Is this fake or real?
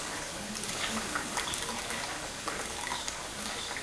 fake